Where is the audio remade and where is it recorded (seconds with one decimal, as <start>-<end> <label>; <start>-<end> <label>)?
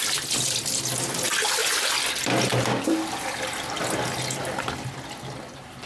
0.0-5.9 recorded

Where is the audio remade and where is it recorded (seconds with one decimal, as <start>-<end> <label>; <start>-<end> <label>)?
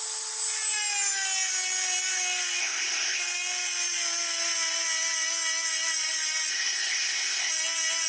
0.0-2.6 recorded; 2.6-3.2 remade; 3.2-6.5 recorded; 6.5-7.5 remade; 7.5-8.1 recorded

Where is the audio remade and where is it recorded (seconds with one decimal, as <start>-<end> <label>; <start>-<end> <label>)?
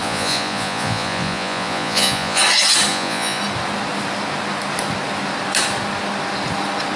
0.0-2.4 remade; 2.4-2.9 recorded; 2.9-3.4 remade; 3.4-7.0 recorded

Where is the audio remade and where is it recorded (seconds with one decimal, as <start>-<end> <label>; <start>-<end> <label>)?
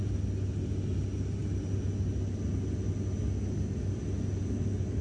0.0-5.0 recorded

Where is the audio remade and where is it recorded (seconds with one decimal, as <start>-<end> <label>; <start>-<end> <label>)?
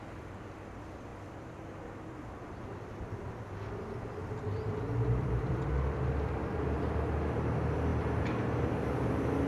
0.0-4.2 recorded; 4.2-5.7 remade; 5.7-9.5 recorded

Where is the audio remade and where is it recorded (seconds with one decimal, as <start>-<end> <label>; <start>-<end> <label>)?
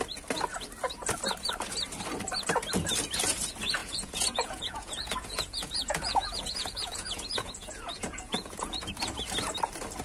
0.0-3.8 recorded; 3.8-8.9 remade; 8.9-10.0 recorded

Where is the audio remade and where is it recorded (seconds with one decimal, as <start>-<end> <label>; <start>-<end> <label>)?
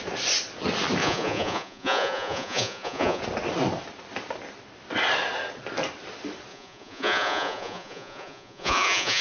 0.0-1.0 recorded; 1.0-3.2 remade; 3.2-6.5 recorded; 6.5-9.2 remade